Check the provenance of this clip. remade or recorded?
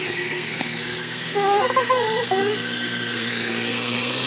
remade